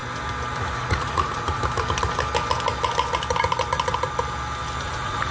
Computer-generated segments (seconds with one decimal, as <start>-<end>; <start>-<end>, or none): 0.6-1.6; 4.8-5.3